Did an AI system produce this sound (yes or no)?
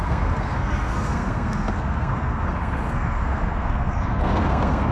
yes